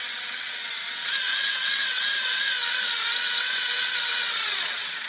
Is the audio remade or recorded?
remade